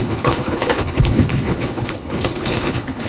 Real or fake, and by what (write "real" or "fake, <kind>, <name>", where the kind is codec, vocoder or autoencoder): fake, codec, HILCodec